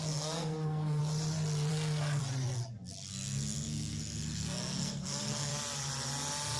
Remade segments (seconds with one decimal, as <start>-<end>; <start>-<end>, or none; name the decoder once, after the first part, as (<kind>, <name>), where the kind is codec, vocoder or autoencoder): 0.0-1.0 (codec, SNAC); 1.7-2.2; 3.1-5.5